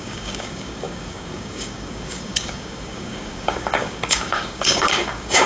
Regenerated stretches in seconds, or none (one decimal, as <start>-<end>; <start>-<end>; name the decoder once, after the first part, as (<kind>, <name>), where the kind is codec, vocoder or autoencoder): 0.0-5.5 (codec, DAC)